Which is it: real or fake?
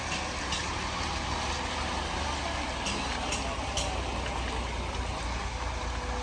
real